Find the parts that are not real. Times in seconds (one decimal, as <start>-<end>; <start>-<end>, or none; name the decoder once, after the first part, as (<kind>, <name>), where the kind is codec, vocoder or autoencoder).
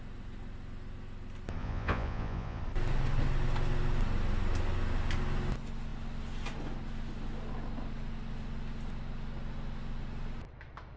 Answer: 1.6-2.6 (vocoder, Vocos)